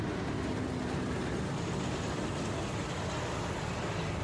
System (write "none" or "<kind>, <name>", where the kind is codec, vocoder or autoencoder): none